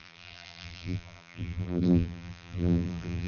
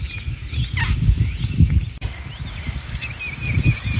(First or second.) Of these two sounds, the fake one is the first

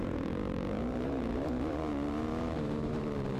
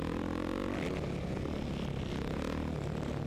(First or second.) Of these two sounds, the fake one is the first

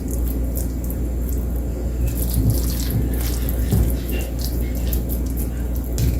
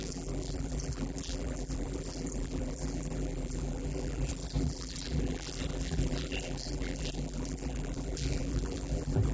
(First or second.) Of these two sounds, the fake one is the second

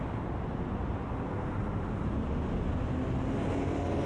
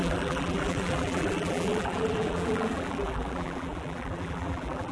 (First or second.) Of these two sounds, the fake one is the second